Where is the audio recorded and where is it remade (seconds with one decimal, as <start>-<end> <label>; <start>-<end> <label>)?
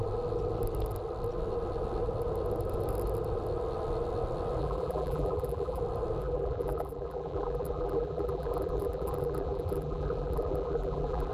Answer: 0.0-4.6 recorded; 4.6-5.8 remade; 5.8-6.2 recorded; 6.2-11.3 remade